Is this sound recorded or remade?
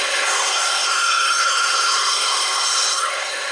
remade